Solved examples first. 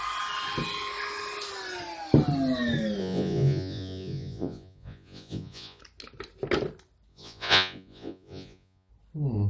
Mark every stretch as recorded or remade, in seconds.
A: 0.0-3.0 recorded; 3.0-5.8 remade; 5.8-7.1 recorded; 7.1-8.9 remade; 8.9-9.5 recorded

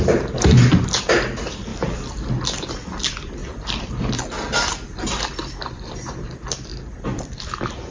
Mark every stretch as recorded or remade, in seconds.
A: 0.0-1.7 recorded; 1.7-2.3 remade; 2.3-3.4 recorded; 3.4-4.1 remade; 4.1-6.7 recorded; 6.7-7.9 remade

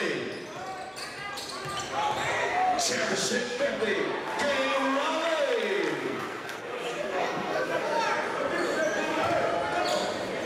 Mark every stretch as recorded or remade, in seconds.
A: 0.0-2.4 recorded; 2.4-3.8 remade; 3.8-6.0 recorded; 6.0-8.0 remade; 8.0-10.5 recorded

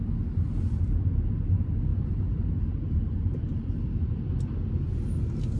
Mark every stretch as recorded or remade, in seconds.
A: 0.0-1.9 recorded; 1.9-3.8 remade; 3.8-5.6 recorded

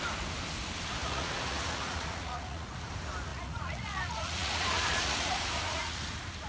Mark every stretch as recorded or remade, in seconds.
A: 0.0-1.0 recorded; 1.0-2.9 remade; 2.9-3.3 recorded; 3.3-6.0 remade; 6.0-6.5 recorded